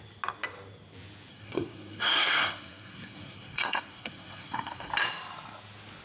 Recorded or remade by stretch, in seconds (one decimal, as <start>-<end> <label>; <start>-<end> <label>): 0.0-1.3 recorded; 1.3-4.9 remade; 4.9-6.0 recorded